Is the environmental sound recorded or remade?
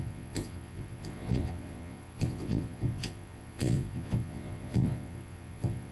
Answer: remade